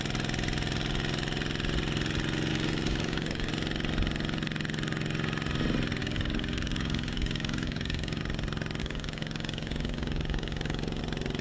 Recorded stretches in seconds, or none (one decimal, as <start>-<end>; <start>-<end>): 0.0-2.5; 3.5-6.0; 8.2-8.8; 11.0-11.4